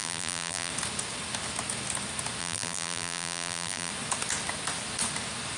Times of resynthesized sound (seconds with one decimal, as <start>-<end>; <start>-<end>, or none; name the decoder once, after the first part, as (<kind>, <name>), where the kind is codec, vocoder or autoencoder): 0.0-0.7 (vocoder, BigVGAN v2); 2.4-3.9